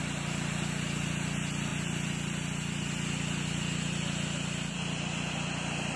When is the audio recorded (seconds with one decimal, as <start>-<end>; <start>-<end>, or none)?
0.0-6.0